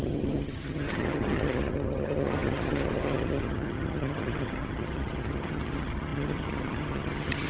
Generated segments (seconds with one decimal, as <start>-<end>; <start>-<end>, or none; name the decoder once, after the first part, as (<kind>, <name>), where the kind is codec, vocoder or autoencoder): 0.0-7.5 (vocoder, HiFi-GAN)